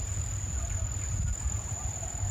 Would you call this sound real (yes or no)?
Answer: yes